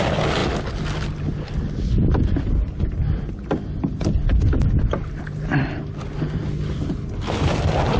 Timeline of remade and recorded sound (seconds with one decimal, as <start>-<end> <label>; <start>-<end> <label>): 0.0-8.0 recorded